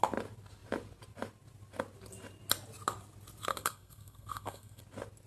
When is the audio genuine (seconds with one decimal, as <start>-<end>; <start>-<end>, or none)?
0.0-3.5; 4.8-5.3